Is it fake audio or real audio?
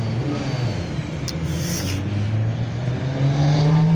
real